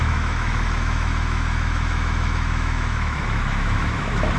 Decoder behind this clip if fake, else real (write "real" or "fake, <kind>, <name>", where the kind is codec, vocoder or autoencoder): fake, autoencoder, DAC-VAE